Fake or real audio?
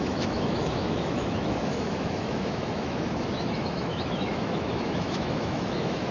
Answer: fake